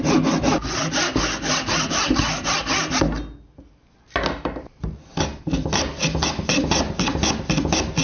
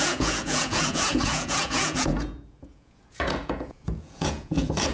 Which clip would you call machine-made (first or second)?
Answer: second